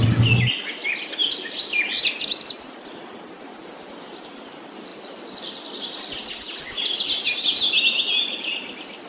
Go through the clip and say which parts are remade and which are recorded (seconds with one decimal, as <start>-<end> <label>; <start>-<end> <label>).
0.0-9.1 recorded